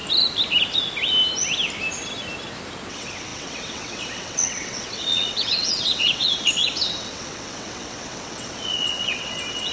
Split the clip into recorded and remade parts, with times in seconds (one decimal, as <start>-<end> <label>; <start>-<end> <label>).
0.0-2.9 recorded; 2.9-9.7 remade

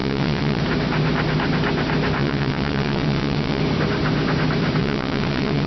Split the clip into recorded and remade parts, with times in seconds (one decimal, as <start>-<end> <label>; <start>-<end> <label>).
0.0-0.6 remade; 0.6-2.2 recorded; 2.2-3.6 remade; 3.6-4.8 recorded; 4.8-5.7 remade

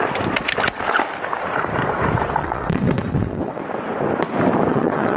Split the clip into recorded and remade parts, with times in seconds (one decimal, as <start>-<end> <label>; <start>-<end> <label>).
0.0-2.4 recorded; 2.4-3.6 remade; 3.6-4.7 recorded; 4.7-5.2 remade

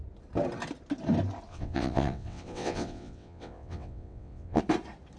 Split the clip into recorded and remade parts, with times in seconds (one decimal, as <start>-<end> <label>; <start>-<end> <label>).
0.0-1.5 recorded; 1.5-4.6 remade; 4.6-5.2 recorded

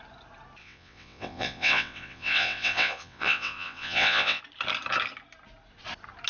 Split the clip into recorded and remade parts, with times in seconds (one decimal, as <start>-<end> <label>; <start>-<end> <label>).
0.0-0.6 recorded; 0.6-4.4 remade; 4.4-6.3 recorded

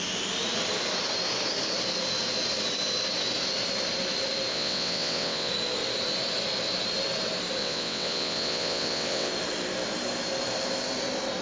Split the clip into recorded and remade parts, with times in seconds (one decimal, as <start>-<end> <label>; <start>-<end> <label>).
0.0-4.5 recorded; 4.5-5.5 remade; 5.5-7.6 recorded; 7.6-9.3 remade; 9.3-11.4 recorded

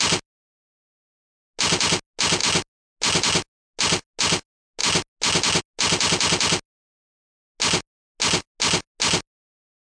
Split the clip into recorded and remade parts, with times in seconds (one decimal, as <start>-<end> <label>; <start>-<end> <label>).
0.0-9.9 recorded

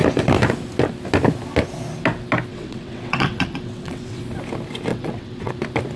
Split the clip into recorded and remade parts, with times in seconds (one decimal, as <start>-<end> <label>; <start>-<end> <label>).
0.0-2.5 recorded; 2.5-4.2 remade; 4.2-4.9 recorded; 4.9-5.5 remade; 5.5-6.0 recorded